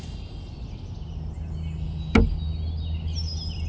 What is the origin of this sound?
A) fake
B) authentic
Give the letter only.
B